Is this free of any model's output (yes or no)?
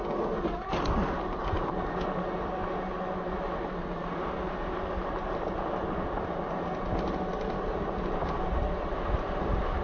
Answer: yes